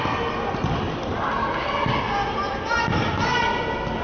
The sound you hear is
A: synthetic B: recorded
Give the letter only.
B